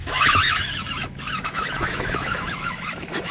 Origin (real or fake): fake